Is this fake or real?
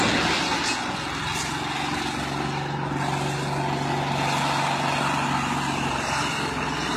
real